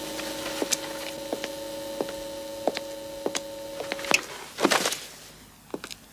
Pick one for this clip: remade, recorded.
recorded